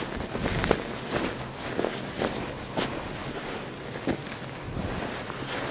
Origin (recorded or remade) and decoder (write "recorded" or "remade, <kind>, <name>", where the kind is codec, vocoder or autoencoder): recorded